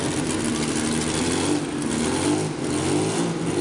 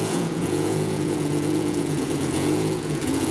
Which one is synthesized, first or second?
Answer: second